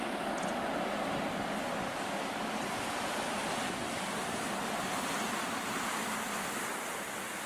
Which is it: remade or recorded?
remade